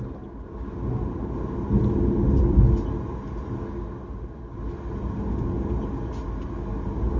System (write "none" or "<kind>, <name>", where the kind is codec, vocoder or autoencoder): none